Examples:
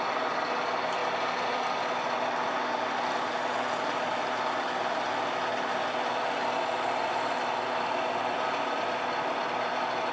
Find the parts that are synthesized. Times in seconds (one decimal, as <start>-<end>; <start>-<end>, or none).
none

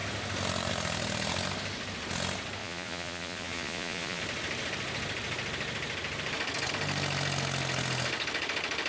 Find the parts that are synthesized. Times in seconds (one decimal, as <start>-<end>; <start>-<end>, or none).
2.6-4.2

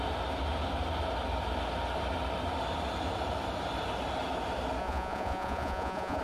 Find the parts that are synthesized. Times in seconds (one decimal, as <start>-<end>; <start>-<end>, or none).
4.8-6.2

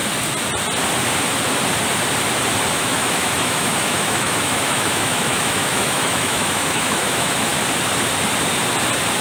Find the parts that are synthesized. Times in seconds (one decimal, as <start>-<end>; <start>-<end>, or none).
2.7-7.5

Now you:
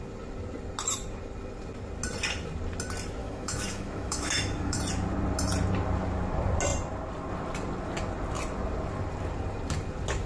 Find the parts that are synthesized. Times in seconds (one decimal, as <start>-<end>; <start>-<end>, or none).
3.2-4.8